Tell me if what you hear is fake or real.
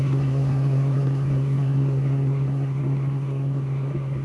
fake